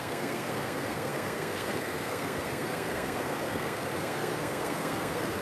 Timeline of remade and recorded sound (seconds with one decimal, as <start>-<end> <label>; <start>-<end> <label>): 0.0-5.4 remade